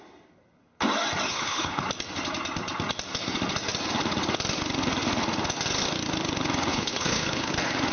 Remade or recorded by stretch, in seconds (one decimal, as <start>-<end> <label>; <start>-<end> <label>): 0.0-1.3 recorded; 1.3-1.8 remade; 1.8-6.7 recorded; 6.7-7.5 remade; 7.5-7.9 recorded